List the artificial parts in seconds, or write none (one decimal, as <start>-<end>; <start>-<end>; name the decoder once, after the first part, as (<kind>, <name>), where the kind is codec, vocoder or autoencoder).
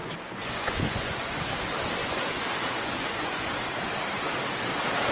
0.0-1.4 (vocoder, Vocos); 2.0-3.6